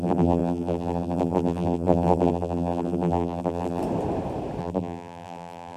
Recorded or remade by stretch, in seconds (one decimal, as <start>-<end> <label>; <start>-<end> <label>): 0.0-3.8 remade; 3.8-4.6 recorded; 4.6-5.8 remade